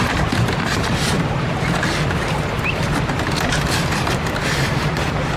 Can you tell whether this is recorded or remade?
recorded